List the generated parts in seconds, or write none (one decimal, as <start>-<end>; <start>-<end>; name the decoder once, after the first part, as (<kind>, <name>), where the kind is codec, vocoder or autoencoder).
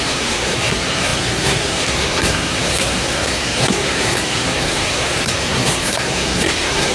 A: 0.0-6.9 (codec, SNAC)